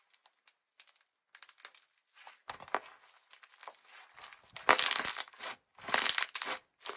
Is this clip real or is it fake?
real